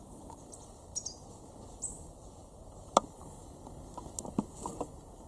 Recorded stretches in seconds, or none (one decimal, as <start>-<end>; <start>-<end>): 0.0-5.3